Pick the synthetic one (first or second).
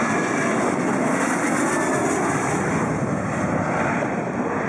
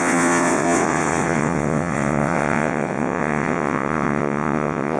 second